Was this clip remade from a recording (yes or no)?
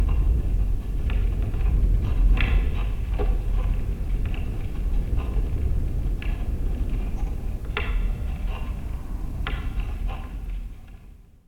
no